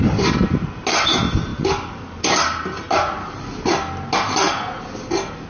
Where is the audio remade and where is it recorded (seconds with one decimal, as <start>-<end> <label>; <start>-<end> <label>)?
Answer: 0.0-5.5 recorded